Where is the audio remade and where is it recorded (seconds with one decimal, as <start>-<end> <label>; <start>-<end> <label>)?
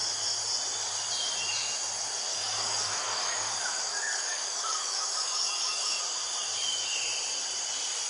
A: 0.0-2.3 recorded; 2.3-3.5 remade; 3.5-3.9 recorded; 3.9-6.0 remade; 6.0-8.1 recorded